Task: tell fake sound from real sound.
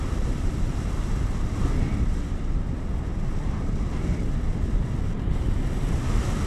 real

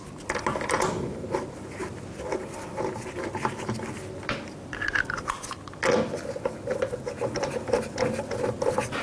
real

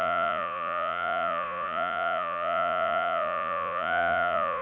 fake